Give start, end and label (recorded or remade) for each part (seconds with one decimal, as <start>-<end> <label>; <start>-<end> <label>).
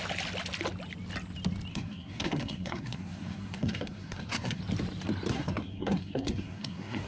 0.0-1.7 recorded; 1.7-4.6 remade; 4.6-5.3 recorded; 5.3-7.1 remade